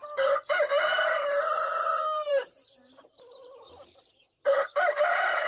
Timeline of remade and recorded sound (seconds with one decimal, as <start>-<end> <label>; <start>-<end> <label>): 0.0-3.4 remade; 3.4-4.5 recorded; 4.5-5.5 remade